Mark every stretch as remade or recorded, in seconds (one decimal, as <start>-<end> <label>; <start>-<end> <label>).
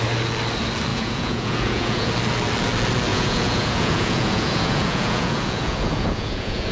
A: 0.0-0.9 recorded; 0.9-2.1 remade; 2.1-3.1 recorded; 3.1-6.7 remade